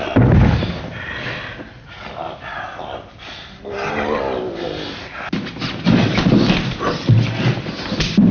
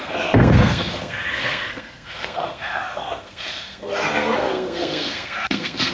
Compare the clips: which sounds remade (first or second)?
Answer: second